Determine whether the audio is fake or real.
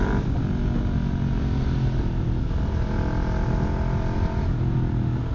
real